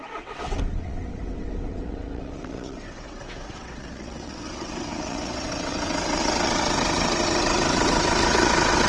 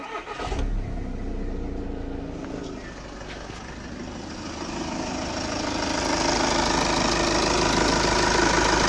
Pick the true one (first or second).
second